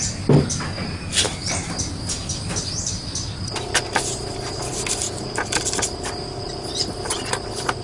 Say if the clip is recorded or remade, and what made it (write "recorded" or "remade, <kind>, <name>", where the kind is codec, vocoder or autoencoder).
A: recorded